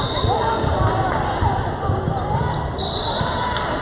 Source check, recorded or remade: recorded